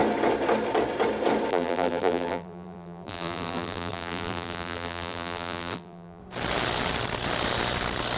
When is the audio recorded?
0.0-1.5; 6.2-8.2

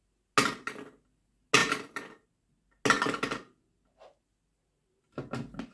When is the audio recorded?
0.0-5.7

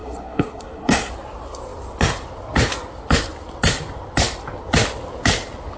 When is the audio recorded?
1.1-5.8

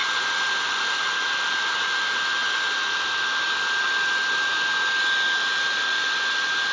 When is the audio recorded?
0.0-6.7

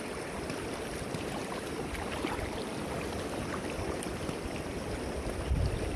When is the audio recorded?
0.0-6.0

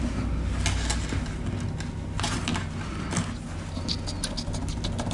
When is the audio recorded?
0.0-5.1

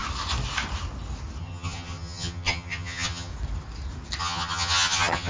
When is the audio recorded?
0.0-1.4; 3.3-4.2